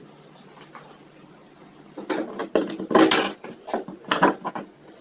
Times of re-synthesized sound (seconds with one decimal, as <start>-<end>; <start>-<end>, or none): none